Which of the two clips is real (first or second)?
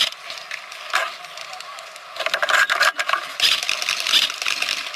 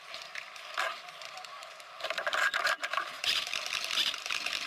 first